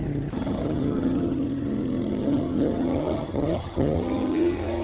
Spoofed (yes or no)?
yes